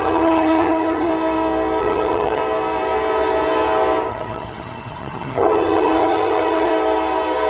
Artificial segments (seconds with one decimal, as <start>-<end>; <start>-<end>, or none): 0.0-1.1; 1.8-2.4; 4.1-6.7